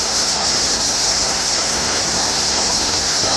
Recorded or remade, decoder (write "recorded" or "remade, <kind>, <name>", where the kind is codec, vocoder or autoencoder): remade, codec, SNAC